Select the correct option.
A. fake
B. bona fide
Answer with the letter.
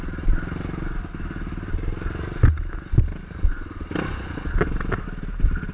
B